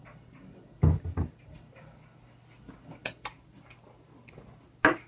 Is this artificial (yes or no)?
no